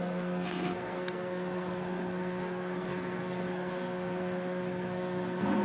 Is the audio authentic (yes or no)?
no